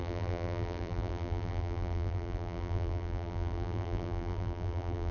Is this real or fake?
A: fake